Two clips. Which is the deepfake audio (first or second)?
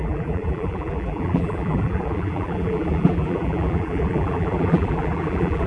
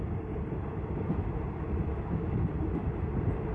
first